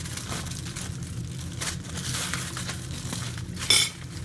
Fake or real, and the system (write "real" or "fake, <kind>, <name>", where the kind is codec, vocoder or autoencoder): real